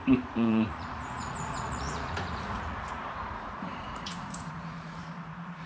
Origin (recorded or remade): remade